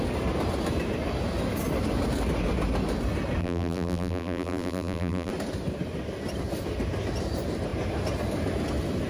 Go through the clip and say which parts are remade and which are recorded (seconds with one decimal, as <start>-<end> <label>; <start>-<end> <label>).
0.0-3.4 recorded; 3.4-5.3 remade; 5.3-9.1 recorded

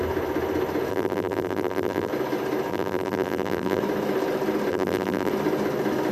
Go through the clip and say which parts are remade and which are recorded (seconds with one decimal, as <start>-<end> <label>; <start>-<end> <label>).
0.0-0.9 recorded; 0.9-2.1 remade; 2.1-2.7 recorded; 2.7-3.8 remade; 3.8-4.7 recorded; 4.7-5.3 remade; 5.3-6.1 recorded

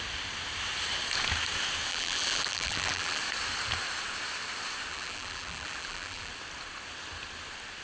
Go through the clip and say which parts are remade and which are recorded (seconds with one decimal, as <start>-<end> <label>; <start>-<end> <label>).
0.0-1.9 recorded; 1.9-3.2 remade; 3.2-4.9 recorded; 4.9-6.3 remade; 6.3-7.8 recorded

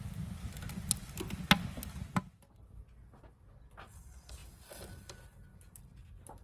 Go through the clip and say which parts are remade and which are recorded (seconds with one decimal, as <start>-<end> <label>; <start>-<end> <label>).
0.0-6.4 recorded

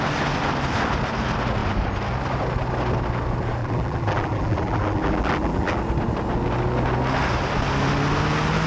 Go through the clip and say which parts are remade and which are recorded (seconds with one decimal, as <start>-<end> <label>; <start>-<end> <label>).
0.0-3.6 recorded; 3.6-5.8 remade; 5.8-8.7 recorded

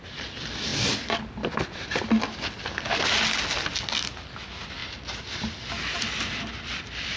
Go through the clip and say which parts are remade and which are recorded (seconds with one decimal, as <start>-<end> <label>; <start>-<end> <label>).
0.0-7.2 recorded

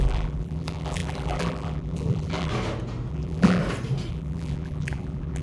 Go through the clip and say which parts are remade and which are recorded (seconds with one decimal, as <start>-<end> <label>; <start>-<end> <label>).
0.0-2.5 remade; 2.5-3.1 recorded; 3.1-3.6 remade; 3.6-4.1 recorded; 4.1-5.4 remade

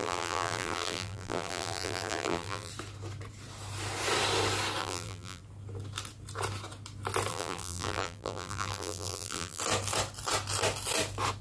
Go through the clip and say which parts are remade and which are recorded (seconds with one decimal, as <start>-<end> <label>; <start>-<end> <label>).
0.0-2.7 remade; 2.7-4.8 recorded; 4.8-5.4 remade; 5.4-7.3 recorded; 7.3-9.6 remade; 9.6-11.4 recorded